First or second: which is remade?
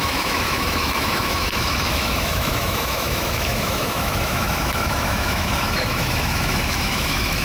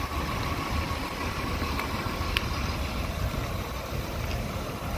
first